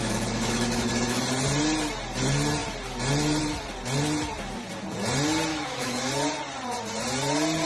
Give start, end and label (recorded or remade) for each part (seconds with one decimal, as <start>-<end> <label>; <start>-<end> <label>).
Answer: 0.0-1.2 remade; 1.2-5.5 recorded; 5.5-6.1 remade; 6.1-7.7 recorded